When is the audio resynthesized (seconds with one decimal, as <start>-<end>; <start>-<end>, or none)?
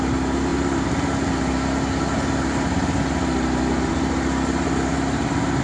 none